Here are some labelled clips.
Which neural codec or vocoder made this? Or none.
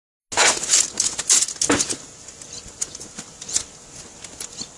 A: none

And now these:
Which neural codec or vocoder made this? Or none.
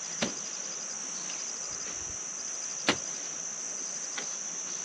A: none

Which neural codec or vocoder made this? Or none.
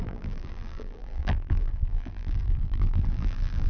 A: vocoder, BigVGAN v2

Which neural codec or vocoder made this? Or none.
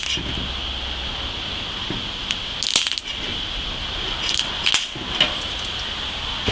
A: none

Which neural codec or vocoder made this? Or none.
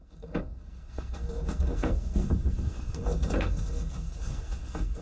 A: codec, SNAC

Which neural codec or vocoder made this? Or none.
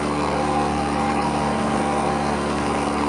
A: codec, SNAC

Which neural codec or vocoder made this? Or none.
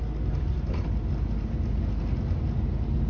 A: none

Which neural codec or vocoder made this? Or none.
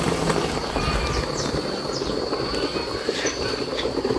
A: none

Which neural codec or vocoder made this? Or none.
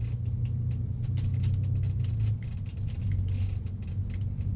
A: none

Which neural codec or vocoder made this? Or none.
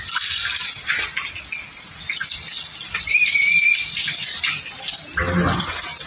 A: none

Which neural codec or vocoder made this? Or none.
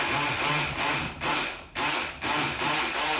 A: none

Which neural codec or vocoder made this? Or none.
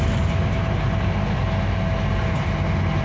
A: none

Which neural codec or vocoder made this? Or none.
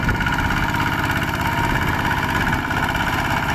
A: none